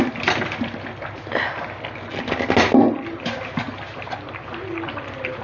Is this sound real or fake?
real